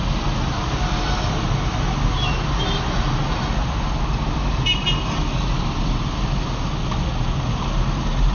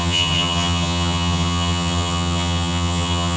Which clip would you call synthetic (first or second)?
second